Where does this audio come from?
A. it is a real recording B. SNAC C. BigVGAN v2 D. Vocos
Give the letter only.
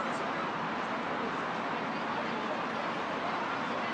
A